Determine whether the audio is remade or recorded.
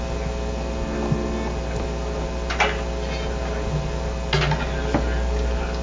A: recorded